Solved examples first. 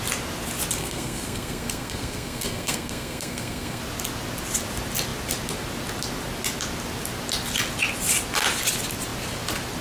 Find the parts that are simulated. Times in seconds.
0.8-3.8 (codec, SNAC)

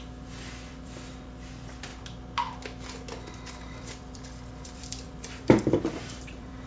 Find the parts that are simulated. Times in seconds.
0.0-1.9 (vocoder, BigVGAN v2); 3.5-6.7

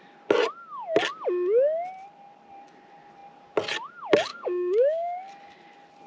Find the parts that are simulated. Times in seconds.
4.3-5.3 (codec, DAC)

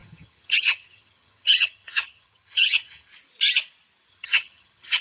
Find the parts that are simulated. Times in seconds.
0.0-3.1 (vocoder, HiFi-GAN); 4.1-5.0

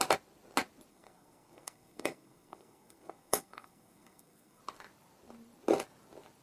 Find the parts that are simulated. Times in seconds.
0.9-4.6 (codec, SNAC)

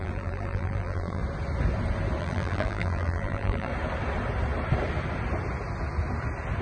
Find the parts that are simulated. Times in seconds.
0.0-1.2 (vocoder, BigVGAN v2); 2.2-3.7

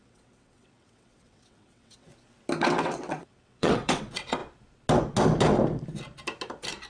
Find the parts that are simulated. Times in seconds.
0.0-2.1 (vocoder, WaveNeXt); 2.6-4.4

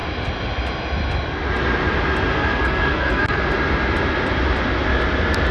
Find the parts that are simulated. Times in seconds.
2.3-3.5 (codec, SNAC)